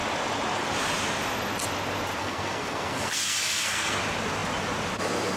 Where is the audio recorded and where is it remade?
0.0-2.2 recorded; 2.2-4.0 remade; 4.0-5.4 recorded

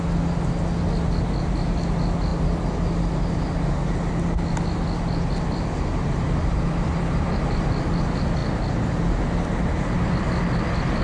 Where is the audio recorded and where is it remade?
0.0-11.0 recorded

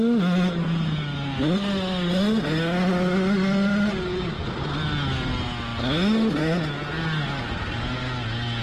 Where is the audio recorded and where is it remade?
0.0-8.6 recorded